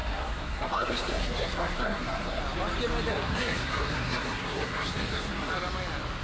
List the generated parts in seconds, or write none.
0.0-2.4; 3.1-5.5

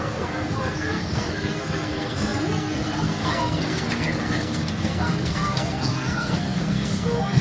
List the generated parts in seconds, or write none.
0.0-7.4

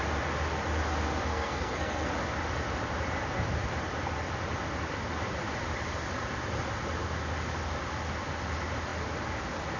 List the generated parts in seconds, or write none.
1.3-2.1

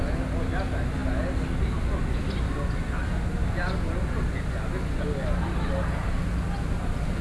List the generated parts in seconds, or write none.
none

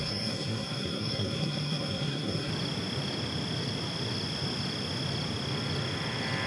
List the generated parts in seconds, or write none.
0.0-2.5

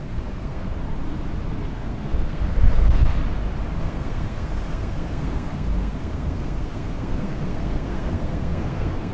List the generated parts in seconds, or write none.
0.0-0.7; 1.6-3.2; 3.8-9.1